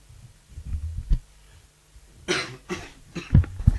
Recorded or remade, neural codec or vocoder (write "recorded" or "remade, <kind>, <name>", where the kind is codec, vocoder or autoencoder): recorded